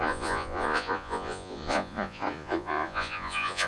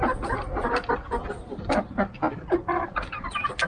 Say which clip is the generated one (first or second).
first